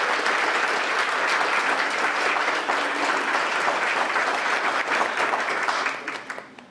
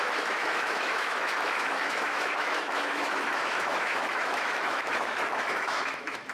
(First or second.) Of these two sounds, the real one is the first